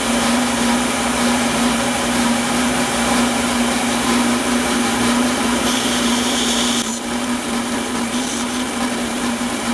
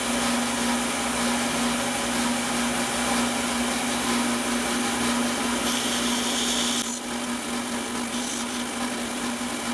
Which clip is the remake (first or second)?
first